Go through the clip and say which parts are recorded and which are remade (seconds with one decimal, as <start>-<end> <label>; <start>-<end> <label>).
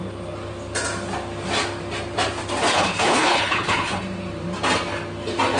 0.0-2.7 recorded; 2.7-4.0 remade; 4.0-5.6 recorded